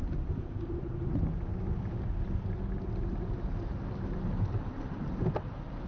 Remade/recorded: recorded